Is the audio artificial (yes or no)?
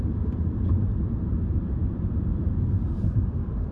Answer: yes